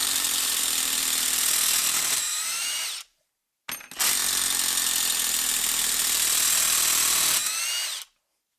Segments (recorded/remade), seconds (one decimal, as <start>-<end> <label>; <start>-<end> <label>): 0.0-0.6 remade; 0.6-1.8 recorded; 1.8-3.3 remade; 3.3-8.6 recorded